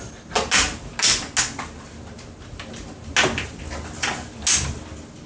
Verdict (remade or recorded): recorded